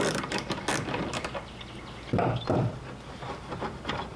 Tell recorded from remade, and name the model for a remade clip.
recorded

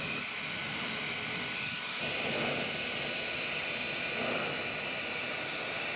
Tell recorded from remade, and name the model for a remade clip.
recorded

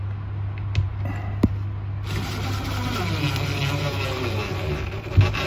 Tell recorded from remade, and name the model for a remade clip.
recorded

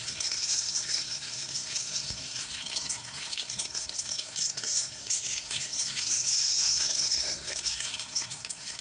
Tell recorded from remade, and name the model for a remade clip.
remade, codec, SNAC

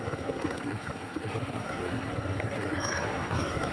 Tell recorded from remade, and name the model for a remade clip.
remade, codec, SNAC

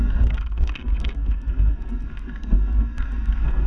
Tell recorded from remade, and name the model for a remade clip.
remade, codec, SNAC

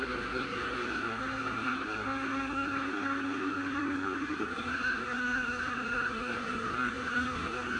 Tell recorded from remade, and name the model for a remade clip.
remade, codec, SNAC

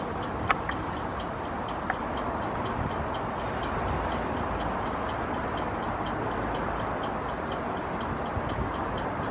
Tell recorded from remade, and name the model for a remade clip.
recorded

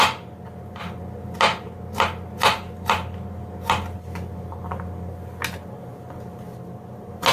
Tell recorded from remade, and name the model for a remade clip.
recorded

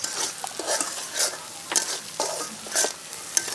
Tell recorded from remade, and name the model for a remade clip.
recorded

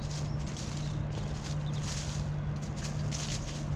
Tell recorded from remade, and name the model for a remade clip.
recorded